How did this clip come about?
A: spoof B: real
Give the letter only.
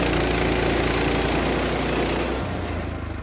B